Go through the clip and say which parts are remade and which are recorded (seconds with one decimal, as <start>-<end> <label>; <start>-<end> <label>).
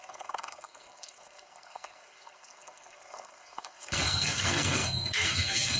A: 0.0-5.8 remade